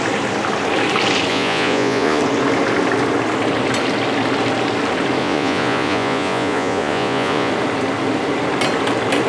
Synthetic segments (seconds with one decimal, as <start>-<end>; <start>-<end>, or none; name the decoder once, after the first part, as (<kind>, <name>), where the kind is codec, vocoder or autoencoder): 1.3-2.2 (vocoder, Vocos); 5.2-7.5